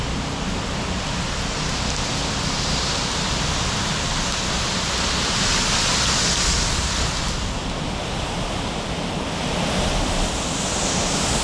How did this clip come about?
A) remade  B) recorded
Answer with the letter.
B